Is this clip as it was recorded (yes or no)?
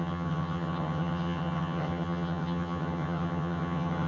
no